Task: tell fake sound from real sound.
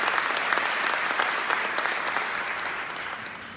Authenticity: real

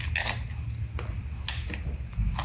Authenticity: real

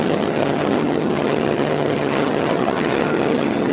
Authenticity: fake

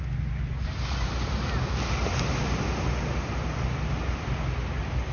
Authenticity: real